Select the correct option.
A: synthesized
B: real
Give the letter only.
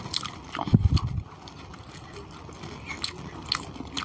B